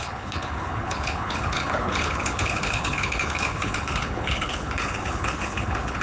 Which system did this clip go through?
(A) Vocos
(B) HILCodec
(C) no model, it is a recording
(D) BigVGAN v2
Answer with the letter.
B